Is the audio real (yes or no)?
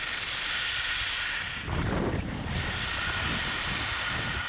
yes